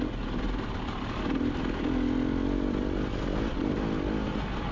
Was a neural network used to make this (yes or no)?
no